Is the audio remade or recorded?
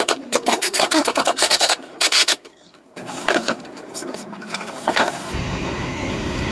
remade